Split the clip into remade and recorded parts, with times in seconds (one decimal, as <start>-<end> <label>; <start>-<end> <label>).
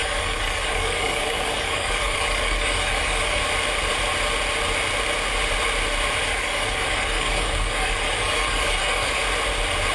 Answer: 0.0-3.4 remade; 3.4-6.3 recorded; 6.3-9.2 remade; 9.2-9.9 recorded